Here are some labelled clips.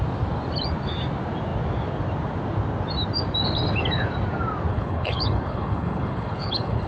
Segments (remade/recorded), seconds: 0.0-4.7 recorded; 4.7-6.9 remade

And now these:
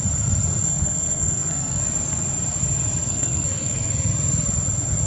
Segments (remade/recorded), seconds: 0.0-0.6 recorded; 0.6-1.8 remade; 1.8-3.0 recorded; 3.0-3.9 remade; 3.9-5.1 recorded

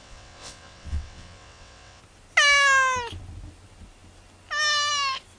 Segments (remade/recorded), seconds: 0.0-2.0 remade; 2.0-5.4 recorded